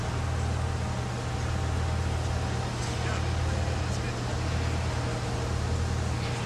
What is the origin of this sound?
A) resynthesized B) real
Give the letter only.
B